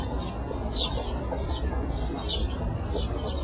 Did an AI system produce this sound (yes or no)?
no